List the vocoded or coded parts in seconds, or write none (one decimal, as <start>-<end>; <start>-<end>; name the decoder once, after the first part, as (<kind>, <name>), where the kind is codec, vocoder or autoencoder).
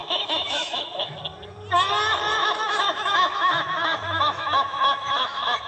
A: 0.0-1.2 (autoencoder, DAC-VAE); 2.4-5.7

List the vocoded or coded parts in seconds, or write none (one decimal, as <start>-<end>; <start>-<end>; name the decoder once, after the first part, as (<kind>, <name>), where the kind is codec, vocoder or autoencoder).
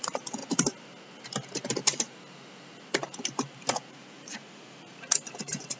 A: 0.0-0.4 (vocoder, Vocos); 3.9-5.8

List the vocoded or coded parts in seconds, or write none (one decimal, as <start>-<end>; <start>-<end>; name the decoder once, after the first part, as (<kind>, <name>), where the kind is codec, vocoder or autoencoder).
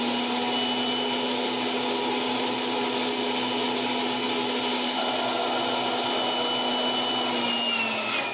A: none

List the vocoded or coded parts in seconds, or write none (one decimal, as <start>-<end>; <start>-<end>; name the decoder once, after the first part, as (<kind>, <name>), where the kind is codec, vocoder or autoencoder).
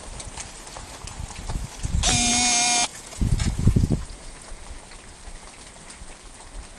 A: 2.9-4.5 (vocoder, Vocos)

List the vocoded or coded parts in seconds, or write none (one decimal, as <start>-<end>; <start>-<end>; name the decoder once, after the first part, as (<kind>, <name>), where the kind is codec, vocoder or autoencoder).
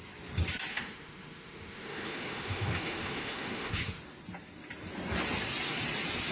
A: 0.7-4.0 (autoencoder, DAC-VAE)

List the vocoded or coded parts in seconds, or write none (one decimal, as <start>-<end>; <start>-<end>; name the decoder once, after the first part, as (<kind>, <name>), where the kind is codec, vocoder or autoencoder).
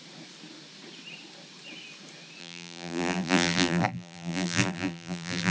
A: 2.4-5.5 (vocoder, BigVGAN v2)